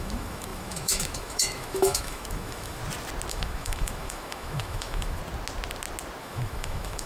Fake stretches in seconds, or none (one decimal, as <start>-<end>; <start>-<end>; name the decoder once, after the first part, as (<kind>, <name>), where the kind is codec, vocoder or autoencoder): 0.0-2.8 (autoencoder, DAC-VAE); 3.3-5.2; 6.2-7.1